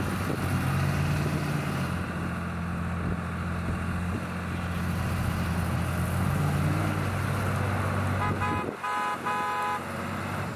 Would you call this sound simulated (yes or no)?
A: no